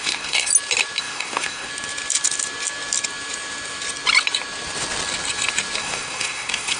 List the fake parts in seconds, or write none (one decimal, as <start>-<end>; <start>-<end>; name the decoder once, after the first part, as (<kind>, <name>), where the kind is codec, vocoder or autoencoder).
0.0-0.5 (codec, SNAC); 1.0-1.7; 5.8-6.8